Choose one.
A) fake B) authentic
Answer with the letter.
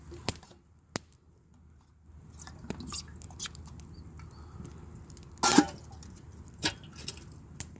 B